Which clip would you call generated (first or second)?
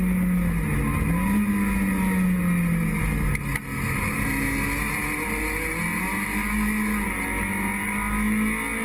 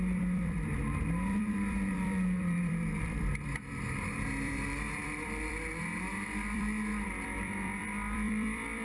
second